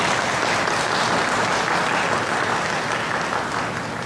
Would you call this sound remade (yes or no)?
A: no